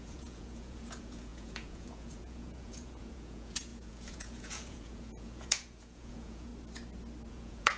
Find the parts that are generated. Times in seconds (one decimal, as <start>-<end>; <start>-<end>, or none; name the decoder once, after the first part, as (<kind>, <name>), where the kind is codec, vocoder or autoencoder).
0.0-6.5 (vocoder, Vocos); 7.3-7.8